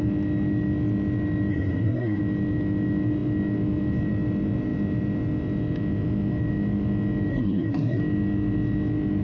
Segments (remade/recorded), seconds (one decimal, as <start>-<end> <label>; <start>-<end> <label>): 0.0-1.5 recorded; 1.5-2.2 remade; 2.2-7.3 recorded; 7.3-8.0 remade; 8.0-9.2 recorded